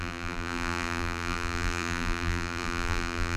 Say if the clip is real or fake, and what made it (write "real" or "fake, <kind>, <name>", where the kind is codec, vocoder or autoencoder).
fake, vocoder, BigVGAN v2